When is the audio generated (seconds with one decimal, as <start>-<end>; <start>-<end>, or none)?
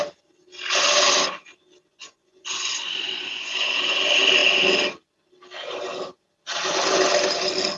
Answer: 1.9-3.7